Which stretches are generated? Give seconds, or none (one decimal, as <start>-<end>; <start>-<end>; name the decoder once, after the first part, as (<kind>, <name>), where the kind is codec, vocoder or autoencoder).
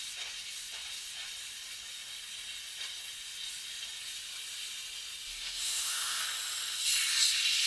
5.3-6.2 (autoencoder, DAC-VAE)